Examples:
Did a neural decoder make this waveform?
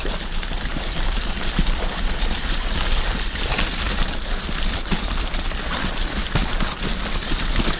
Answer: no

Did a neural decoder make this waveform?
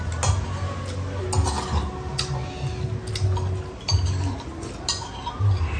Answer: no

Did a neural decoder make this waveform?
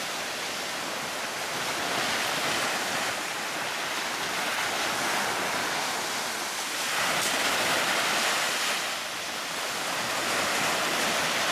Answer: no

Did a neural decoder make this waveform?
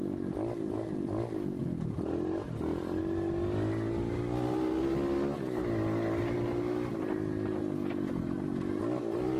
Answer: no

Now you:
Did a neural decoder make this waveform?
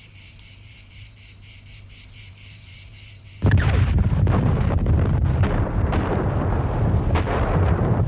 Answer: yes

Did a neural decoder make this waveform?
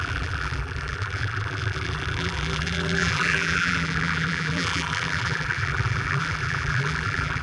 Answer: yes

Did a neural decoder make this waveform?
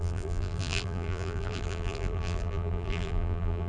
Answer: yes